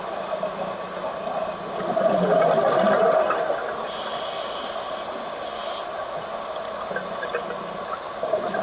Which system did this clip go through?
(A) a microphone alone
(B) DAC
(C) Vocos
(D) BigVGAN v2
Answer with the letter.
A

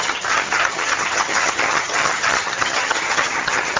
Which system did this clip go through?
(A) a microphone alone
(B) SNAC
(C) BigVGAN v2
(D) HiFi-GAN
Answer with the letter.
D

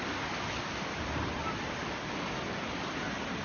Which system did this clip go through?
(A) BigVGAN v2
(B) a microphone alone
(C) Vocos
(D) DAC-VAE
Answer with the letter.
B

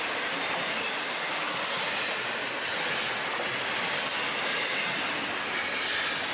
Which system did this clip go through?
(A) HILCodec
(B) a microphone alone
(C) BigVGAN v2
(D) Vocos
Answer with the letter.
B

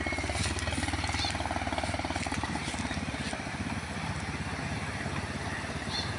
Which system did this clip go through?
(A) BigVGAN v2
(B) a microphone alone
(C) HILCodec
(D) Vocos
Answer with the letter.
B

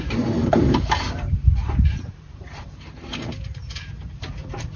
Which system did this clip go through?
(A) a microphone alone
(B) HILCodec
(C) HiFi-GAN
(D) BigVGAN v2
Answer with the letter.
D